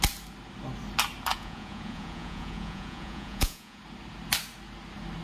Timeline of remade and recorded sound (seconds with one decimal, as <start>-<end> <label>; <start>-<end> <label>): 0.0-1.3 recorded; 1.3-3.8 remade; 3.8-5.2 recorded